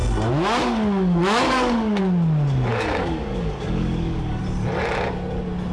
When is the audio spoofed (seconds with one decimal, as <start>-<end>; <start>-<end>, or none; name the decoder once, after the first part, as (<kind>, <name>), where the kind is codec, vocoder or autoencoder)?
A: 0.6-2.0 (codec, DAC); 2.7-4.4